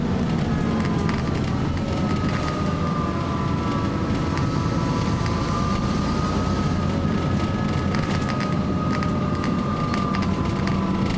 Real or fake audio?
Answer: real